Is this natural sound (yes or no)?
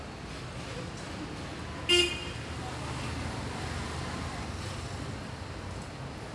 yes